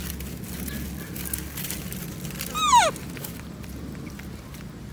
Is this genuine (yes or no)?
yes